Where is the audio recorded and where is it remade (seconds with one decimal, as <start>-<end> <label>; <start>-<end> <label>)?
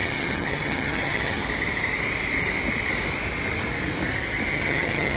0.0-1.4 remade; 1.4-4.5 recorded; 4.5-5.2 remade